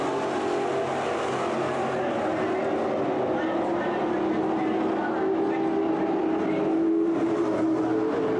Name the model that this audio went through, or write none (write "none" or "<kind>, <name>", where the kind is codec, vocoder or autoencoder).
none